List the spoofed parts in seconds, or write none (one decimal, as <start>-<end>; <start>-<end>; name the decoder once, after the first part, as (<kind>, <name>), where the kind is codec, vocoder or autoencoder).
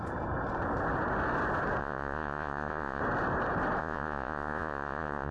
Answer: 1.8-3.0 (vocoder, Vocos); 3.8-5.3